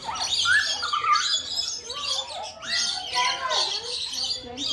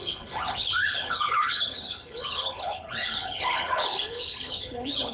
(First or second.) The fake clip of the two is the second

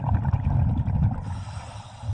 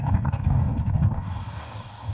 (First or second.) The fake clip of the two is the second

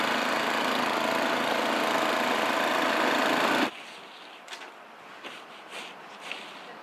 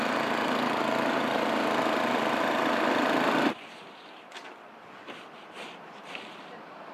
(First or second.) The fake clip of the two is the second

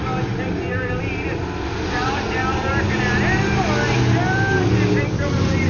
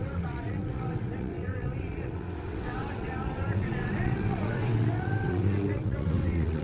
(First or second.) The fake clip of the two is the second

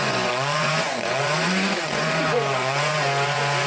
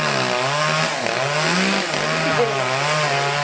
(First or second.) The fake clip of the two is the first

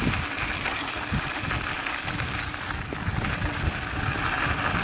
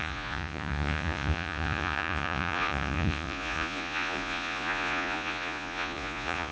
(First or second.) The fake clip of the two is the second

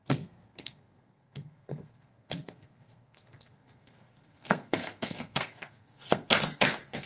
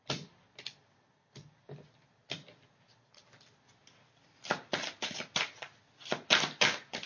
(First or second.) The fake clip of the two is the first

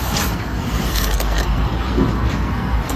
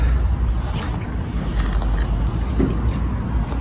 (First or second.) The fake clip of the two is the first